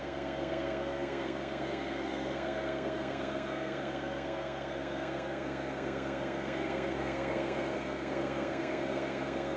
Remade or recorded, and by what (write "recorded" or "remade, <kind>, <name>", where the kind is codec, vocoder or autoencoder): remade, codec, SNAC